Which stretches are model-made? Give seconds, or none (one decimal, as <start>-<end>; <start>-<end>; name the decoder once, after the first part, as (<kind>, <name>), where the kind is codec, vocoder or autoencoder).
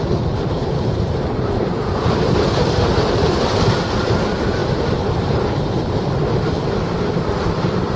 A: 0.6-3.7 (vocoder, BigVGAN v2); 4.6-5.8